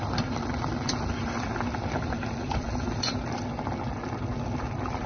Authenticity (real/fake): real